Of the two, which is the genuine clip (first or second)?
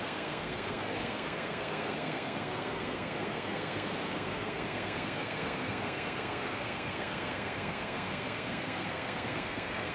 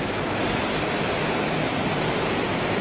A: second